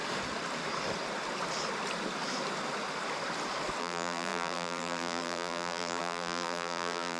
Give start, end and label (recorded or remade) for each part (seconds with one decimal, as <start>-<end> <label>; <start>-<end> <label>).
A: 0.0-3.8 recorded; 3.8-7.2 remade